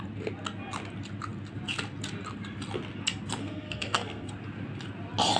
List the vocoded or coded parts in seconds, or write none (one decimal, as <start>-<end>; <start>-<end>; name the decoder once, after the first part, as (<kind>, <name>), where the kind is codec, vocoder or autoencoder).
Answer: 3.4-4.3 (codec, SNAC)